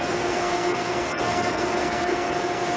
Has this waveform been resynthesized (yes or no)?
yes